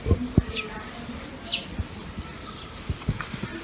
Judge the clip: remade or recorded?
recorded